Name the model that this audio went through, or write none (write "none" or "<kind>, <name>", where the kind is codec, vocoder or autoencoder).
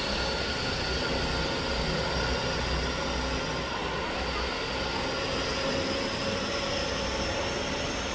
none